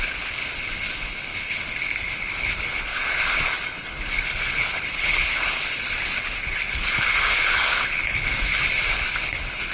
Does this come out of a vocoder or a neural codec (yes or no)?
yes